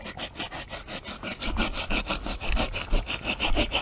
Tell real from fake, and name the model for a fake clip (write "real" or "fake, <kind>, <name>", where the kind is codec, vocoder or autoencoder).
real